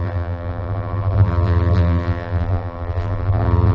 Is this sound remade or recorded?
remade